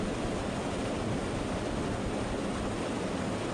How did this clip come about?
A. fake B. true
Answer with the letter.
B